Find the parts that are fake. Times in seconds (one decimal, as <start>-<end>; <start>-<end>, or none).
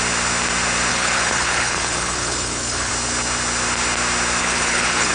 0.9-2.9; 4.4-5.1